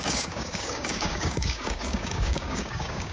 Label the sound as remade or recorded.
remade